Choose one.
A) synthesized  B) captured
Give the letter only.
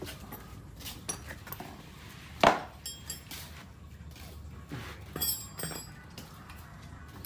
B